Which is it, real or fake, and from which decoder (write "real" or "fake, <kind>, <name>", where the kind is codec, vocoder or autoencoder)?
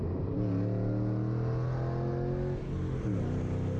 real